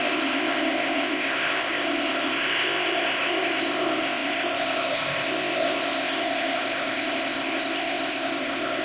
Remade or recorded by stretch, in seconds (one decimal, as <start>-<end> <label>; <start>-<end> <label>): 0.0-8.8 remade